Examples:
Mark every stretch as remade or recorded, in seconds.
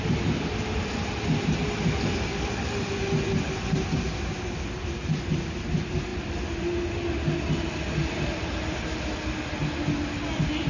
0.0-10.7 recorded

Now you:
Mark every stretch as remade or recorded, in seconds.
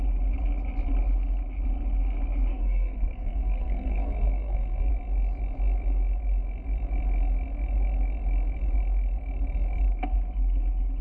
0.0-2.5 recorded; 2.5-4.9 remade; 4.9-11.0 recorded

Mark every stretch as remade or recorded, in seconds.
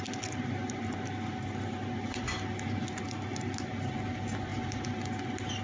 0.0-5.6 recorded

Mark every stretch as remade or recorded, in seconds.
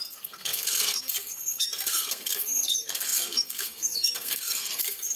0.0-5.2 remade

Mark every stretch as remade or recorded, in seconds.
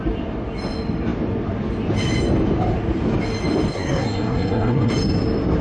0.0-3.7 recorded; 3.7-4.9 remade; 4.9-5.6 recorded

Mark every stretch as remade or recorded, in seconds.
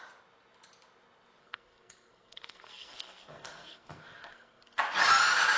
0.0-1.4 recorded; 1.4-4.8 remade; 4.8-5.6 recorded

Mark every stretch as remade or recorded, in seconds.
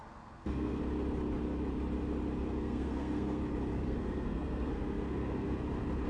0.0-0.8 remade; 0.8-2.5 recorded; 2.5-3.4 remade; 3.4-3.8 recorded; 3.8-5.6 remade; 5.6-6.1 recorded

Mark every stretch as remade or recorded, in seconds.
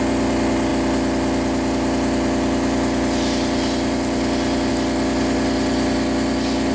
0.0-6.7 recorded